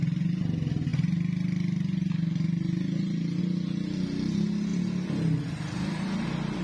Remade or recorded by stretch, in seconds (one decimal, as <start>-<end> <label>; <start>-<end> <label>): 0.0-6.6 recorded